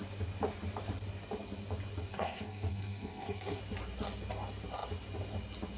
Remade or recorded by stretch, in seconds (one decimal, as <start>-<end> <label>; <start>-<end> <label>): 0.0-2.1 recorded; 2.1-3.6 remade; 3.6-5.8 recorded